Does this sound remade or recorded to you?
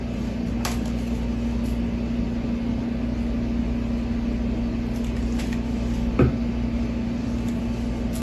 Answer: recorded